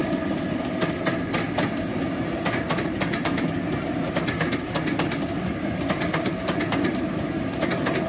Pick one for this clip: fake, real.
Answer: real